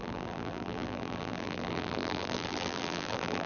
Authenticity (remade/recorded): remade